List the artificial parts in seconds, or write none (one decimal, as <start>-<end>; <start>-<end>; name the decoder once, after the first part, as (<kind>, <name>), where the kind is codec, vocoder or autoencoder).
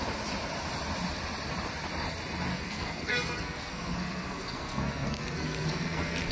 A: 2.5-6.3 (codec, SNAC)